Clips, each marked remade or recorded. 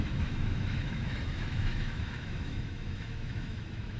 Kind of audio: remade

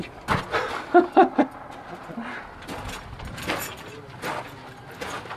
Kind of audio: recorded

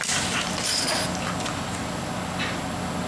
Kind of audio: recorded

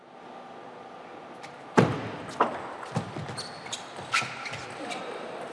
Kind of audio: recorded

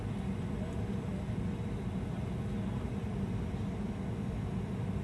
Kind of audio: recorded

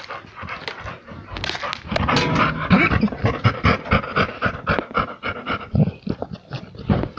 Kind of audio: recorded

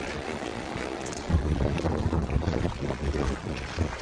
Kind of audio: remade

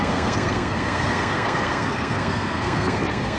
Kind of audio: remade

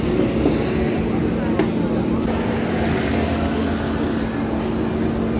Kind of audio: recorded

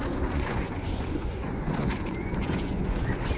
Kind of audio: remade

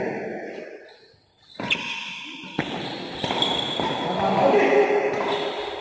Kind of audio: recorded